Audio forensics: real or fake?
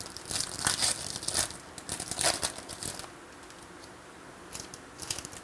real